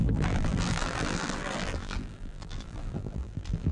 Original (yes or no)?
no